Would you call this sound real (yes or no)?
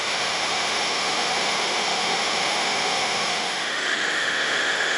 no